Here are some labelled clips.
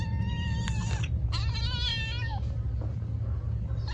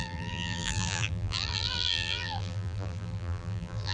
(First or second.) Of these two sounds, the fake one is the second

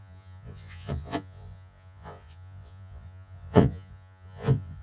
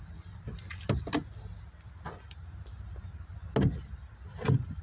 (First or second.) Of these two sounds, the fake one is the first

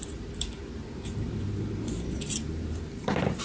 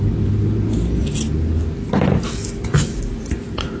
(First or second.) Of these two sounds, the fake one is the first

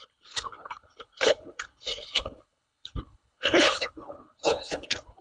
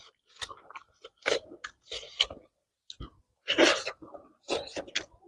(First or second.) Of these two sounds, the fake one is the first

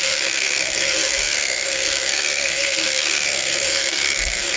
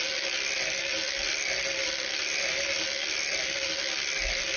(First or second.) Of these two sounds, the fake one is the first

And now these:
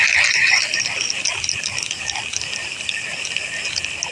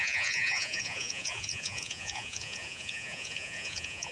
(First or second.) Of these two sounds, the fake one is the second